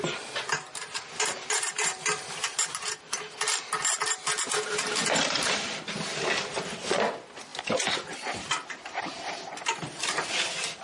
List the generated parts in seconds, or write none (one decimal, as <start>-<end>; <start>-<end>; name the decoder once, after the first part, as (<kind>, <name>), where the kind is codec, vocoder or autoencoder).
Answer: none